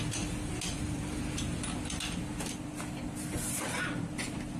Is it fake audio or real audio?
real